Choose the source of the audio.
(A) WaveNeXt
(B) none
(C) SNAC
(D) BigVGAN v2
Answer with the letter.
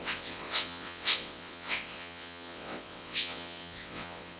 A